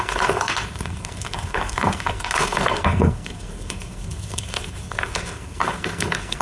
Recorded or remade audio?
remade